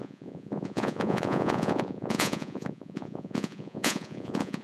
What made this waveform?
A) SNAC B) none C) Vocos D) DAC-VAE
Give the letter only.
C